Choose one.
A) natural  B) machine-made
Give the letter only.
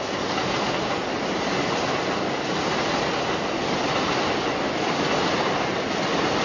A